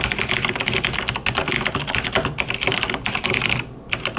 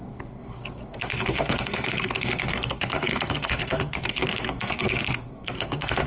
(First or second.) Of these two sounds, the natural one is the first